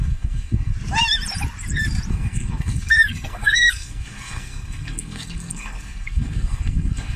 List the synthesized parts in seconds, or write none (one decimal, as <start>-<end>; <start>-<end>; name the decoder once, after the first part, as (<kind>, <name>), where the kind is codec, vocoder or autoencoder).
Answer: 0.0-0.7 (codec, SNAC); 2.1-7.2